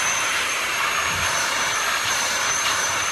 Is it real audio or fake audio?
fake